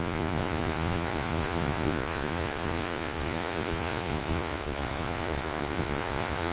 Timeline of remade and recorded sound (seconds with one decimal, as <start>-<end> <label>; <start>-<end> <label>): 0.0-6.5 remade